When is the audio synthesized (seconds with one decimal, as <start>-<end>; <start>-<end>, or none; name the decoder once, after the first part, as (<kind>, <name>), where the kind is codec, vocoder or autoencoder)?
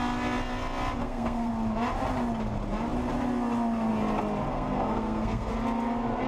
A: 1.0-1.5 (codec, SNAC); 4.5-5.5